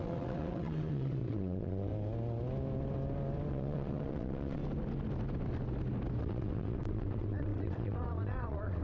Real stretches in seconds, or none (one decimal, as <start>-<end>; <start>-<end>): 1.9-3.5; 4.6-6.2